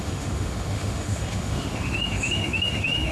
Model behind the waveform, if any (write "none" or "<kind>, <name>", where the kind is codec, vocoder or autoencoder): autoencoder, DAC-VAE